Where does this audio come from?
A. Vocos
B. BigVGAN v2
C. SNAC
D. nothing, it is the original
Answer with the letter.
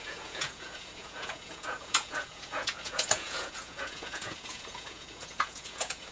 A